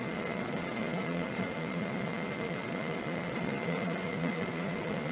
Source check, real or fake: fake